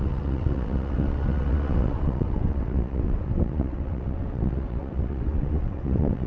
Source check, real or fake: fake